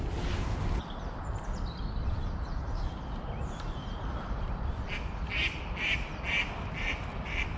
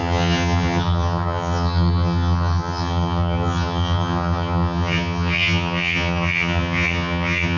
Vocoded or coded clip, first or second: second